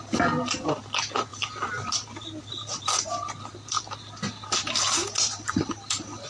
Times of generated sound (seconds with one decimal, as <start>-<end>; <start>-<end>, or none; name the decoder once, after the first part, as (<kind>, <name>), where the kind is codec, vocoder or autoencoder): none